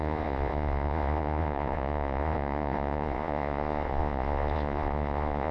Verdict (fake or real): fake